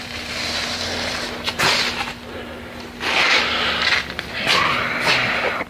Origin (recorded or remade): recorded